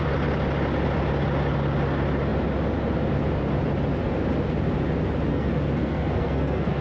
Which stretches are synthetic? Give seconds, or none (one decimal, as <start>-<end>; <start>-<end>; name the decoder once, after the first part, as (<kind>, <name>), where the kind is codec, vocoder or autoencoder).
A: 5.3-6.8 (codec, SNAC)